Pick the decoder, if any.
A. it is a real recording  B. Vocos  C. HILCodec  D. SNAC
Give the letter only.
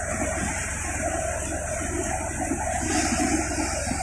A